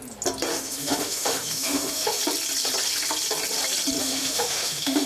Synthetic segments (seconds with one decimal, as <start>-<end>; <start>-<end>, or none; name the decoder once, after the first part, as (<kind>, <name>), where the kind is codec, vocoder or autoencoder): 0.5-2.2 (autoencoder, DAC-VAE); 4.0-5.1

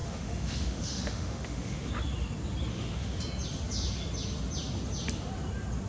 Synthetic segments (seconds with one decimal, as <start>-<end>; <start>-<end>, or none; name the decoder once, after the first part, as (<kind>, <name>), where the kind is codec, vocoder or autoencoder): 0.0-1.9 (autoencoder, DAC-VAE); 2.7-3.2

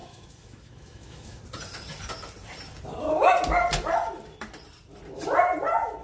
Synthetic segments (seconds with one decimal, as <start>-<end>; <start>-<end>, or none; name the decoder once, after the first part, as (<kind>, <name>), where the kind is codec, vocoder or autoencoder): 0.0-1.4 (autoencoder, DAC-VAE)

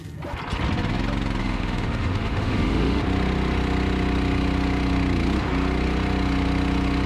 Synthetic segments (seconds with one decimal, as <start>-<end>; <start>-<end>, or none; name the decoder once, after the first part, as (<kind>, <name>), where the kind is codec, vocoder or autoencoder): 1.4-3.0 (autoencoder, DAC-VAE)

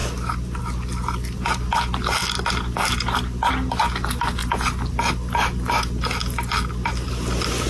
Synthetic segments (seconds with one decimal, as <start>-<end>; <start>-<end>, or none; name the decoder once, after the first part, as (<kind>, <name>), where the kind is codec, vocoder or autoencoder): none

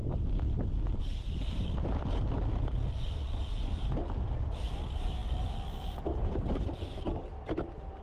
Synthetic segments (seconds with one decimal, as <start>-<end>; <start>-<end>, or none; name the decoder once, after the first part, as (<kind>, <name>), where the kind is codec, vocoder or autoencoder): none

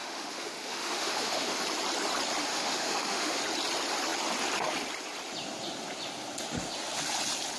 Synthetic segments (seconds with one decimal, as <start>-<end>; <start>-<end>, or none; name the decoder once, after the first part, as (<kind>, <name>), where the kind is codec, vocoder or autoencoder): 0.0-1.6 (autoencoder, DAC-VAE); 2.5-3.4